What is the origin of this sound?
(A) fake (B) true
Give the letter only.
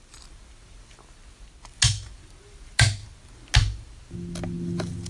B